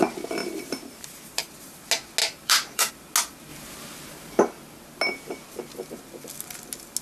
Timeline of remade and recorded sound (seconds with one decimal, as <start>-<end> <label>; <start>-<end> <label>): 0.0-0.4 recorded; 0.4-1.5 remade; 1.5-2.2 recorded; 2.2-2.9 remade; 2.9-3.5 recorded; 3.5-4.4 remade; 4.4-7.0 recorded